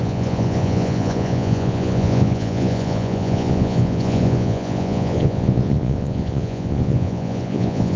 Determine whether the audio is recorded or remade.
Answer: remade